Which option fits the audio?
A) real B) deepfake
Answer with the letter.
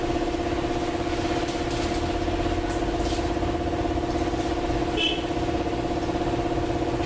A